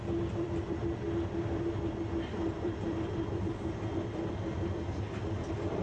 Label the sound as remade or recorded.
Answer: remade